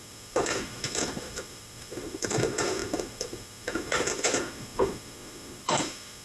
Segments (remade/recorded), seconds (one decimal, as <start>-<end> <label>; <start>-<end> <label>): 0.0-6.2 remade

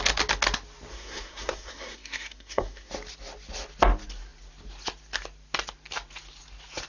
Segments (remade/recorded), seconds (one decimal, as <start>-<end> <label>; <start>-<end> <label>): 0.0-0.9 recorded; 0.9-2.9 remade; 2.9-6.9 recorded

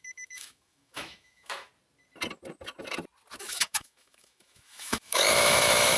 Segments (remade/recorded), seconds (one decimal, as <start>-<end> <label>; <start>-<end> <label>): 0.0-1.7 remade; 1.7-3.4 recorded; 3.4-6.0 remade

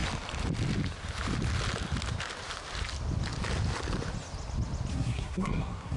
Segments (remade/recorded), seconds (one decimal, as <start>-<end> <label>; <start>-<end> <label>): 0.0-4.9 recorded; 4.9-6.0 remade

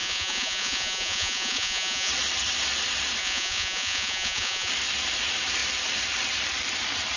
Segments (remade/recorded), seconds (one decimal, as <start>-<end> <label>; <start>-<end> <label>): 0.0-2.1 remade; 2.1-3.2 recorded; 3.2-4.7 remade; 4.7-7.2 recorded